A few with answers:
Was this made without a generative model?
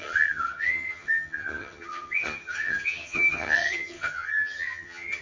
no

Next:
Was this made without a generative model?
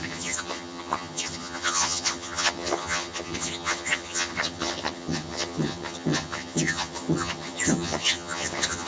no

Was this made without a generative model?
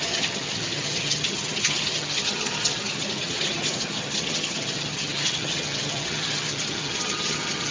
no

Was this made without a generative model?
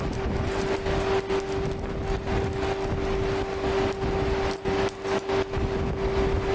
yes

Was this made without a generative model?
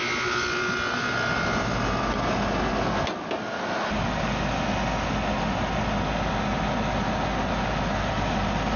yes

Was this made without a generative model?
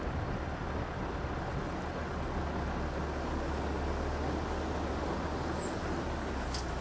yes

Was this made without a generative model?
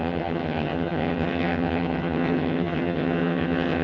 no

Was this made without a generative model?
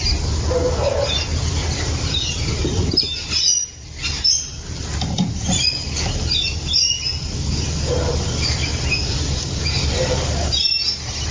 yes